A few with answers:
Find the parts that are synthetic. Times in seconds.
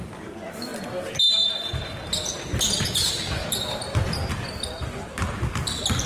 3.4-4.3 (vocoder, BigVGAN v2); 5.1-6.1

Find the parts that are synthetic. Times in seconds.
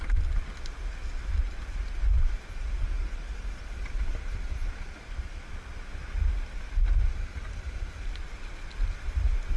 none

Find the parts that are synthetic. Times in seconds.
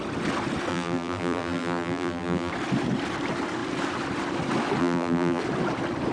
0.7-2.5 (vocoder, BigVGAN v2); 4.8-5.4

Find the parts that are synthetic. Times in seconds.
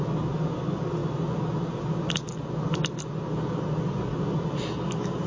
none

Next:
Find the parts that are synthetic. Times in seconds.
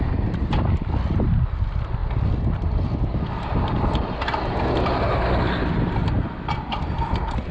none